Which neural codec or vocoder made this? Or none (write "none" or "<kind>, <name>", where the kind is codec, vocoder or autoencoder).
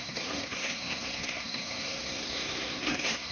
codec, SNAC